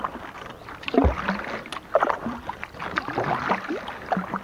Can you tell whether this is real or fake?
real